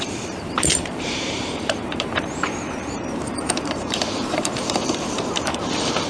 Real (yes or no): no